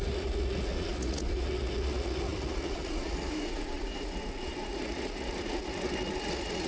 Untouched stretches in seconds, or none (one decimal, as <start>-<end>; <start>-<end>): none